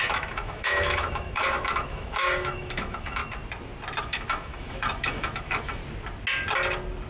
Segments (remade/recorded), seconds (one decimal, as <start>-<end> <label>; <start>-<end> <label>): 0.0-3.2 remade; 3.2-4.0 recorded; 4.0-5.8 remade; 5.8-7.1 recorded